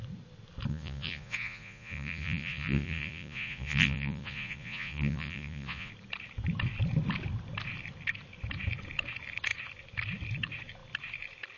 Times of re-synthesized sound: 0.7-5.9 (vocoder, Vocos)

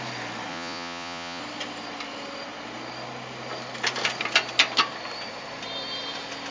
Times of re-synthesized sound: 0.5-1.4 (vocoder, Vocos)

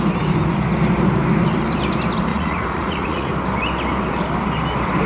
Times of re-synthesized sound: 2.3-3.3 (vocoder, Vocos)

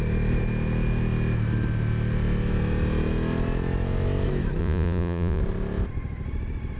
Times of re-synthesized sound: 4.6-5.4 (vocoder, Vocos)

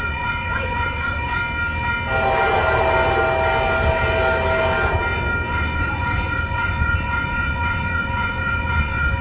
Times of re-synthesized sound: 0.0-1.4 (vocoder, Vocos); 5.5-9.2

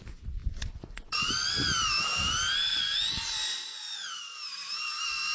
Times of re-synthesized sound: 0.4-1.3 (vocoder, Vocos); 2.7-4.3

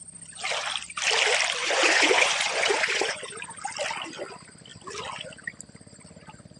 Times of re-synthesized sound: 1.6-3.2 (vocoder, Vocos)

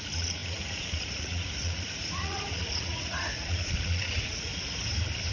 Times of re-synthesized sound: 0.0-4.5 (vocoder, Vocos)